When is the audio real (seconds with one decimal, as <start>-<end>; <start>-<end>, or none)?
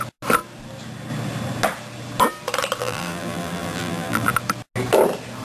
0.0-2.8; 4.3-5.4